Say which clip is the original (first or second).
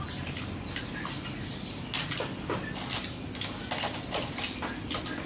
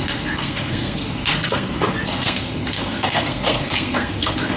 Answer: first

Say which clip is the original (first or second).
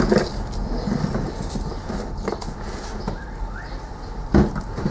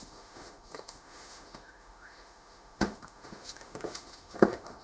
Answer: first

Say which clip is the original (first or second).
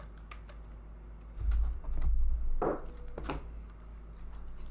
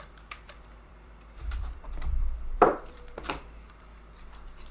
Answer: first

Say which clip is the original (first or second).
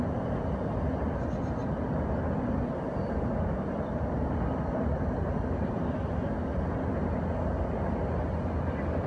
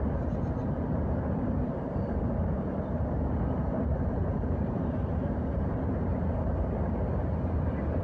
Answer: first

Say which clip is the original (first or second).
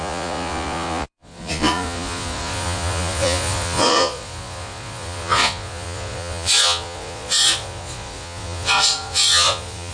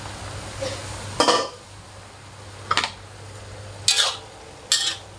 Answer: second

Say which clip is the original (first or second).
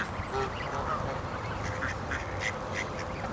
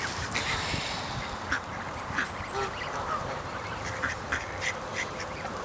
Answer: first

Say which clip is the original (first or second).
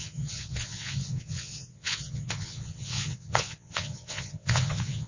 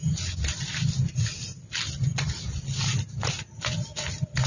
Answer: second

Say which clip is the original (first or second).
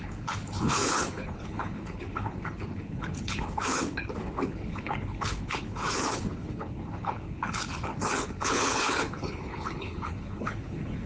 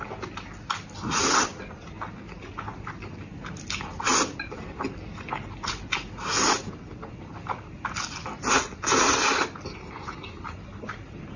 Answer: second